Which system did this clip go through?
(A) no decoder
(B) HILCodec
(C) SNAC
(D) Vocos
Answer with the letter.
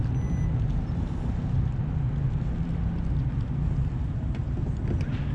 A